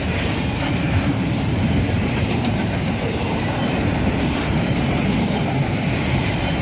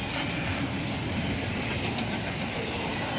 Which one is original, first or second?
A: second